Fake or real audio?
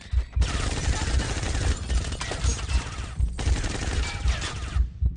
real